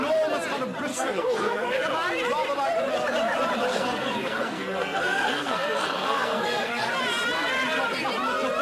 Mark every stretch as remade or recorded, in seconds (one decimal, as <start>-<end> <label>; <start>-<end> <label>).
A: 0.0-0.9 recorded; 0.9-1.8 remade; 1.8-3.7 recorded; 3.7-6.9 remade; 6.9-8.6 recorded